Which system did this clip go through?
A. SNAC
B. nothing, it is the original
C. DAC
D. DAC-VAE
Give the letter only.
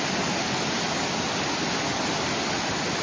B